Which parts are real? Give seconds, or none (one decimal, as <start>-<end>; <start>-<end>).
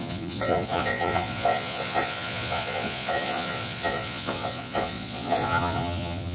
none